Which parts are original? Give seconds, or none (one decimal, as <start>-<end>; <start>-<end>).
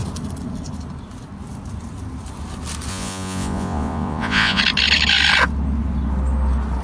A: 0.0-2.9; 4.6-6.8